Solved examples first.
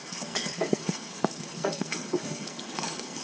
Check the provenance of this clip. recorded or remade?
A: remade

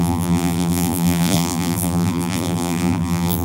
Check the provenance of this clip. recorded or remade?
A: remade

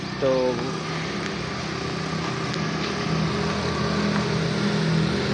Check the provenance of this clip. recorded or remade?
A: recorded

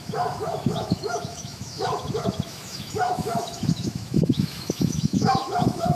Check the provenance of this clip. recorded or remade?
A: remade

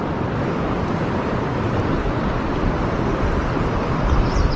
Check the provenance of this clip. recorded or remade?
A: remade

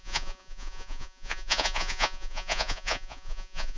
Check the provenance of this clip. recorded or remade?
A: remade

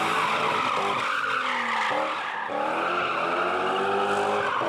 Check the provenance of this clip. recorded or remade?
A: recorded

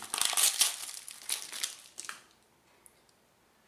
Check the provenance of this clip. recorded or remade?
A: recorded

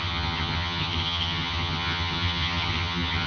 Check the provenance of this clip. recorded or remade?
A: remade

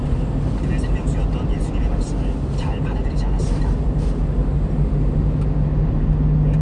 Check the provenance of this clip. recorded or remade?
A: recorded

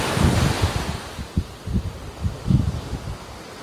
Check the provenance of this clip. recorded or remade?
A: recorded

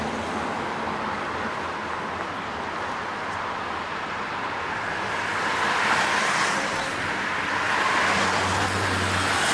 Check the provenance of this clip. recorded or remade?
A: recorded